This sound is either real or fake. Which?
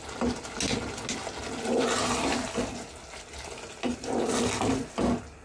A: real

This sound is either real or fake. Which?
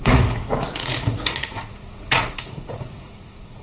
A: fake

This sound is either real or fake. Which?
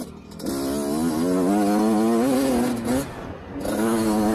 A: real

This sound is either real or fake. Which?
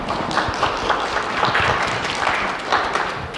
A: real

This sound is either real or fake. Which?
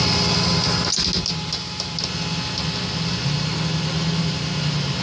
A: real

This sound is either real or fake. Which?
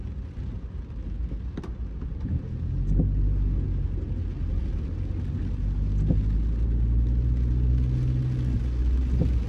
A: real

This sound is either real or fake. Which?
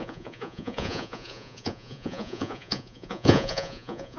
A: fake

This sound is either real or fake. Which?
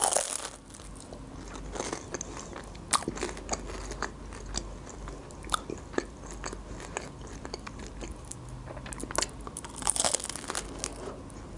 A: real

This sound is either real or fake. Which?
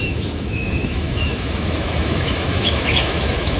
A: fake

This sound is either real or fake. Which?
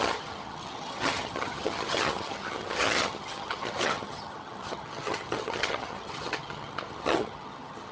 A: fake